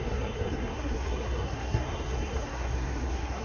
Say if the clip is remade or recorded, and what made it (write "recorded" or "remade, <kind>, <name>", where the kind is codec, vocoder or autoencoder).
remade, codec, SNAC